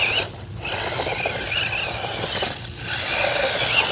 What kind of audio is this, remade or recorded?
recorded